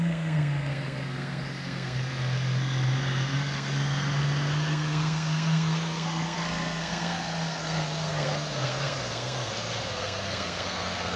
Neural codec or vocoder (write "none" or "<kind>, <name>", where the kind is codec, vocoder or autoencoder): codec, SNAC